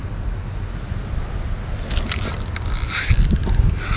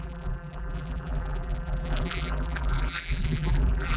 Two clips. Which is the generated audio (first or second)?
second